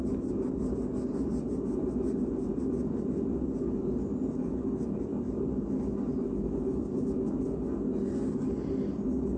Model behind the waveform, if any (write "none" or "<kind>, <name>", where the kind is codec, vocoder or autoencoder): none